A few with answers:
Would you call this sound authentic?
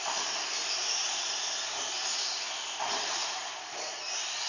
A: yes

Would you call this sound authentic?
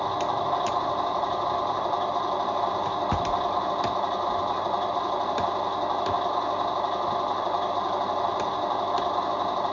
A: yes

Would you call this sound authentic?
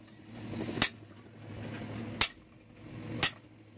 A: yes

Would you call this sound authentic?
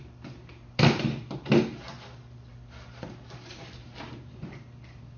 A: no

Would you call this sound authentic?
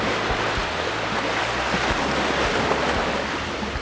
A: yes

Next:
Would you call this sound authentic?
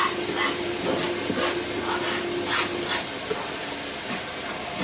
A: yes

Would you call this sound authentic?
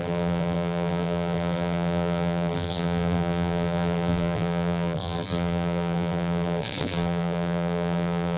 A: no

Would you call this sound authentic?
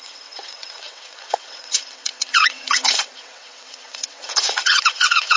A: no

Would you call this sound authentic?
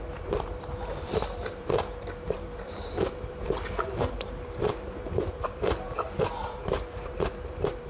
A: no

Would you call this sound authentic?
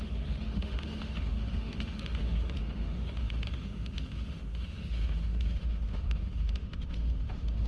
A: no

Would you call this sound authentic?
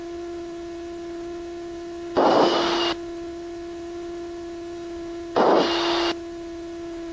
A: yes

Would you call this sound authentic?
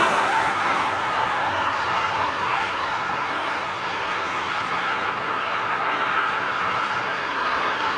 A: no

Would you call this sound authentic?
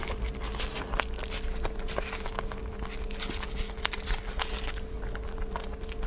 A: yes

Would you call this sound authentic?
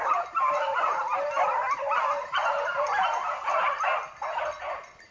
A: yes